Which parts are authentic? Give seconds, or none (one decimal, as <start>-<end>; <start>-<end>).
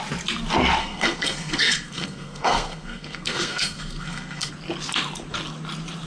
0.0-0.8; 4.5-6.1